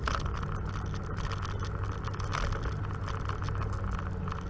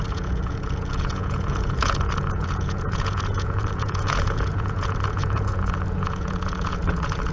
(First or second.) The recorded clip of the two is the first